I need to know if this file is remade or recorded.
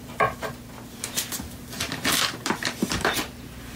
recorded